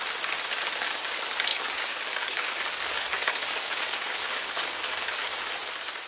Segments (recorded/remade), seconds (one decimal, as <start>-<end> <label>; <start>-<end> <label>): 0.0-1.5 recorded; 1.5-5.2 remade; 5.2-6.1 recorded